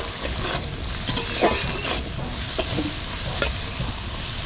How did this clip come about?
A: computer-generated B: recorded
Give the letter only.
B